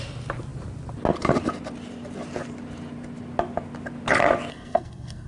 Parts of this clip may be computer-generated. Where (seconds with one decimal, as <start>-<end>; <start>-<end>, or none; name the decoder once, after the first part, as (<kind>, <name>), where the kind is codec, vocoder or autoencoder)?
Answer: 4.5-5.3 (codec, SNAC)